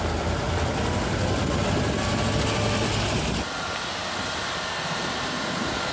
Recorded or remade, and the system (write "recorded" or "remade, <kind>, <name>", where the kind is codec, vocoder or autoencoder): recorded